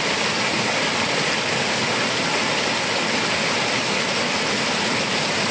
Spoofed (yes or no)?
no